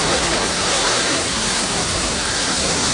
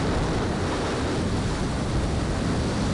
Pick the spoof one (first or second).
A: first